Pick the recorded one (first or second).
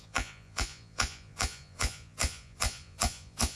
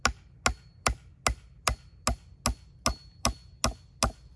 second